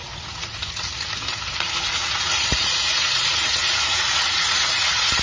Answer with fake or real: fake